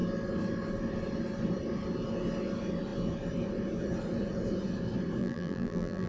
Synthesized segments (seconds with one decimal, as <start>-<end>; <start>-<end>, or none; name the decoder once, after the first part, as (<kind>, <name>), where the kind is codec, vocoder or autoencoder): 5.2-6.1 (vocoder, BigVGAN v2)